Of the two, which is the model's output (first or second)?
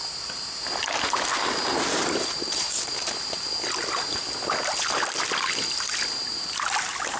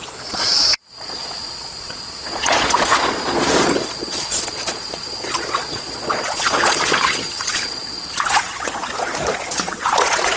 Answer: second